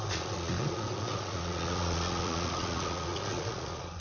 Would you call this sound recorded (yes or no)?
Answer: no